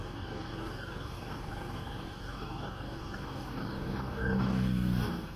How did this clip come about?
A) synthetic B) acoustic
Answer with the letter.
A